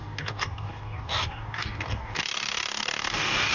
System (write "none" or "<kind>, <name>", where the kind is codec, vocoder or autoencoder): codec, DAC